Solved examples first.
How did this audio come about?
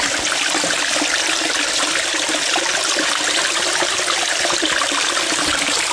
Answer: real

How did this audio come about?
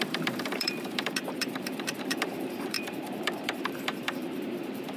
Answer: fake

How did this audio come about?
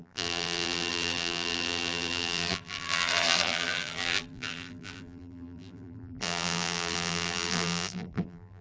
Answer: fake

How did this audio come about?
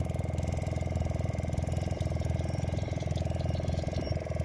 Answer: real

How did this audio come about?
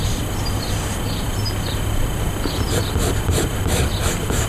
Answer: real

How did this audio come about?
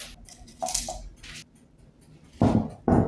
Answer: real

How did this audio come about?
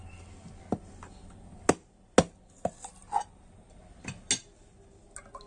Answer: real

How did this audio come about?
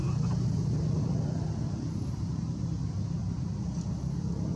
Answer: real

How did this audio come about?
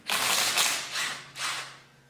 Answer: real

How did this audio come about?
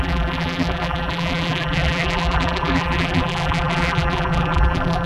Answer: fake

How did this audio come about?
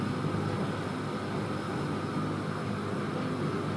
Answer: real